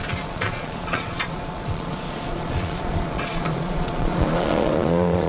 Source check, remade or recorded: remade